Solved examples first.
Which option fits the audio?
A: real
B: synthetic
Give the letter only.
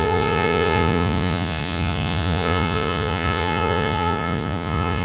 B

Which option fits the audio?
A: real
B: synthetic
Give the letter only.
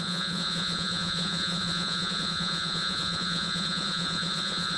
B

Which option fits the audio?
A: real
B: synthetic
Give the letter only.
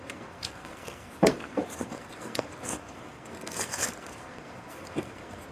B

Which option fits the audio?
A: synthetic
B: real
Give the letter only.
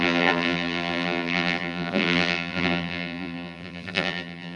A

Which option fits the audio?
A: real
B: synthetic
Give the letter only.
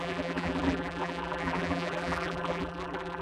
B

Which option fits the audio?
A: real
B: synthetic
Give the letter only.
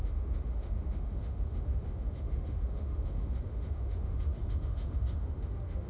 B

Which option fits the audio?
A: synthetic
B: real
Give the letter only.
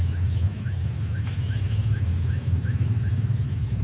A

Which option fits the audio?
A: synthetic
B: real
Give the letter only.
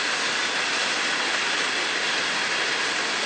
B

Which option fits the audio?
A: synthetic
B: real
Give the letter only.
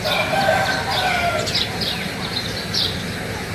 B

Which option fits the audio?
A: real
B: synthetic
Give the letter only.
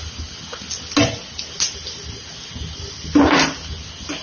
A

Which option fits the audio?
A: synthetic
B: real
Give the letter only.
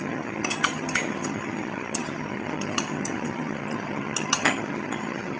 A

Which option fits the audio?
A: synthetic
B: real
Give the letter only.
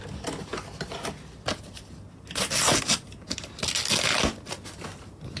B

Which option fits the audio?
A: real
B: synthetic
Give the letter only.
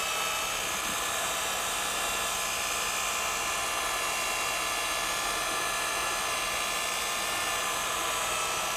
A